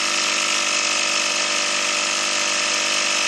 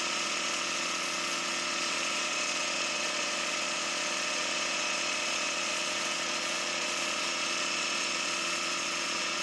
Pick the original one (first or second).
first